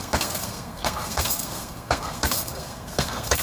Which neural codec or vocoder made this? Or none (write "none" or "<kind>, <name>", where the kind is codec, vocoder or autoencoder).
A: codec, SNAC